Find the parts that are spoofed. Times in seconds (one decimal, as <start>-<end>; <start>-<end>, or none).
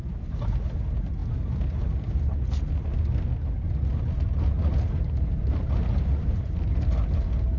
none